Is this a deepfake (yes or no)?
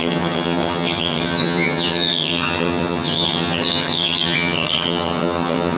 yes